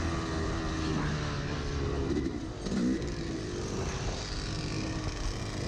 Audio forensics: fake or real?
real